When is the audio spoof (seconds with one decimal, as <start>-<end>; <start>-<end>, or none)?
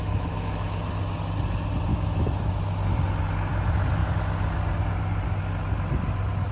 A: 0.0-0.9; 1.9-2.5